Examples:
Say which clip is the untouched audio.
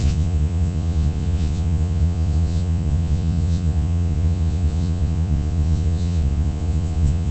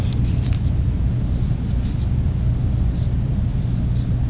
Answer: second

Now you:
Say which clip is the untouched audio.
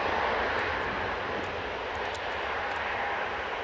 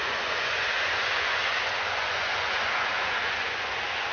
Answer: first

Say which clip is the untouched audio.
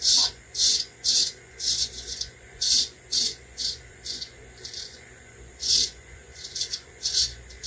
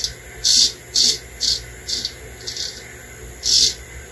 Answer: second